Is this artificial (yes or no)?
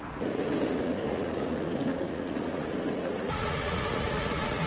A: yes